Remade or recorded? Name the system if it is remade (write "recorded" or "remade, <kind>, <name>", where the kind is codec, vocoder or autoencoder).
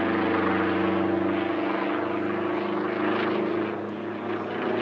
recorded